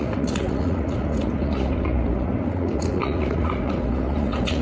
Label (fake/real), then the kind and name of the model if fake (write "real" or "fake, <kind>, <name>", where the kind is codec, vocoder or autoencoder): fake, vocoder, Vocos